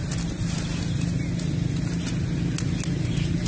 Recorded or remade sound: recorded